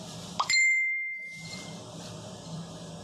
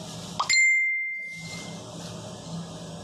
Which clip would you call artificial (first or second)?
first